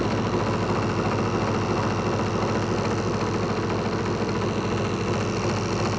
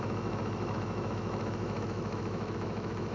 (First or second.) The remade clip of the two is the second